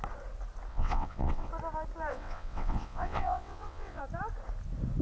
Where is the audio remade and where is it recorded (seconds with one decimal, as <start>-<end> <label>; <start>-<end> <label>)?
0.0-0.7 recorded; 0.7-1.5 remade; 1.5-2.1 recorded; 2.1-4.0 remade; 4.0-5.0 recorded